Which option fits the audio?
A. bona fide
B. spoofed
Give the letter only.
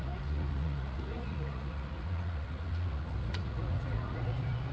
B